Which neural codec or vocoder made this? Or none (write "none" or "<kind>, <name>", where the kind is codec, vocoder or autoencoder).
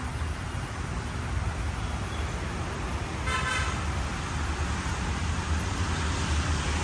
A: none